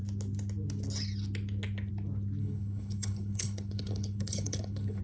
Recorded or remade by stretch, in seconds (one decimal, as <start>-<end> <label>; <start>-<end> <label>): 0.0-2.4 recorded; 2.4-5.0 remade